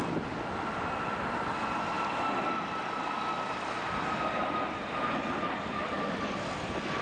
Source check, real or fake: real